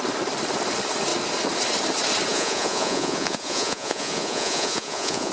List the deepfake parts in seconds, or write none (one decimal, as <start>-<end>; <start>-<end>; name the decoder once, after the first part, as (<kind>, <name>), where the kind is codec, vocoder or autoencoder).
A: 2.3-5.3 (vocoder, Vocos)